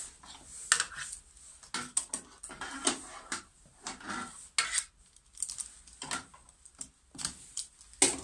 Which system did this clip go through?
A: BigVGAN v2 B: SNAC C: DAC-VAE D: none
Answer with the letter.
D